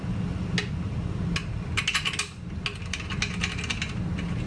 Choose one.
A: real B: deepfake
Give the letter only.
A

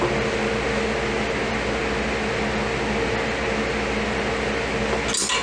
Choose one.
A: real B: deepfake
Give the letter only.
A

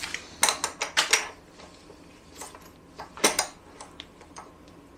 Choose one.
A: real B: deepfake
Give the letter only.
A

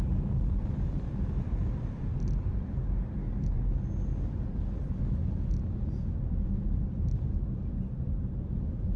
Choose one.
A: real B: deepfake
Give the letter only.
B